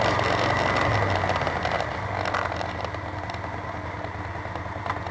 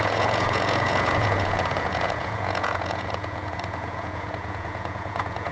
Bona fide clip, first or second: first